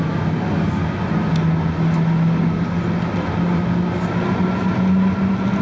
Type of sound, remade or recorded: recorded